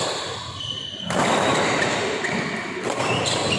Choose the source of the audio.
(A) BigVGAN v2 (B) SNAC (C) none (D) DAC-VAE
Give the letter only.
C